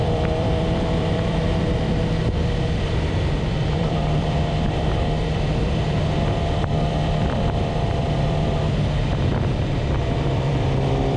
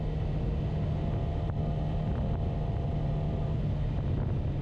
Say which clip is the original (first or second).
second